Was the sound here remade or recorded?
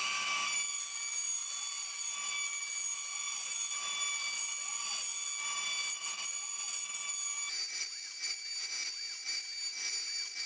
recorded